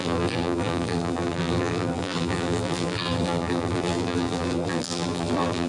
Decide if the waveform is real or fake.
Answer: fake